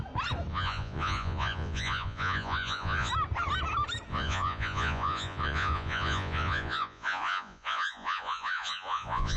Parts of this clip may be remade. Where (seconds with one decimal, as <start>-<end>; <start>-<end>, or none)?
0.5-3.1; 4.1-9.4